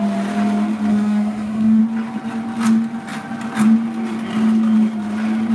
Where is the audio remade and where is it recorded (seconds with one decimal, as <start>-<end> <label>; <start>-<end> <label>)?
0.0-0.9 recorded; 0.9-1.8 remade; 1.8-5.5 recorded